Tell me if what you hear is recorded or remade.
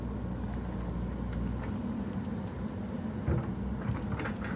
recorded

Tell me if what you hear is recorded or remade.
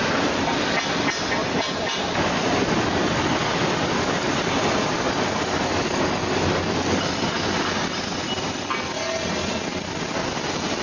recorded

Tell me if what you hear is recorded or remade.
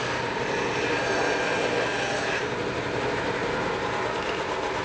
recorded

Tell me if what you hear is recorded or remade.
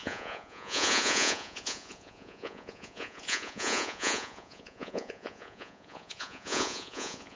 remade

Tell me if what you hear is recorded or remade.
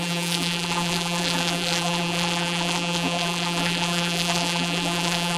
remade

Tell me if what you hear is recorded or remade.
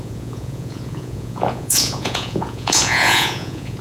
remade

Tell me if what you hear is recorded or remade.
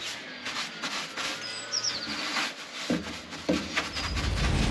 recorded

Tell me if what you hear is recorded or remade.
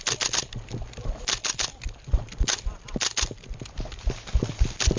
recorded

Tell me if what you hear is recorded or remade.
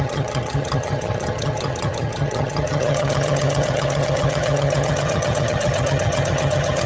remade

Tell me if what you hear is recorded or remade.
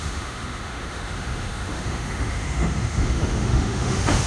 remade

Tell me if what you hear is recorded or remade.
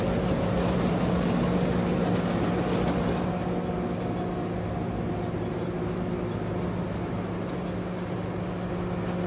recorded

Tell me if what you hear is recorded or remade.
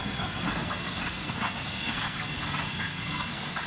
remade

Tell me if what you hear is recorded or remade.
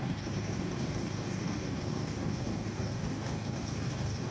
remade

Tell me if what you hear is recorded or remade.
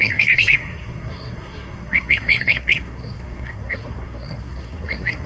remade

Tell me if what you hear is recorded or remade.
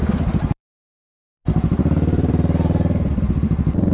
remade